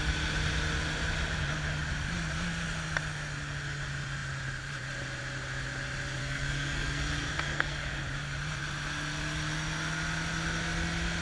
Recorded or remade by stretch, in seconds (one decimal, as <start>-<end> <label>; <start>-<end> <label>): 0.0-6.2 recorded; 6.2-7.9 remade; 7.9-11.2 recorded